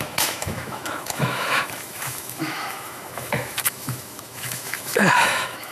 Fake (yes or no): yes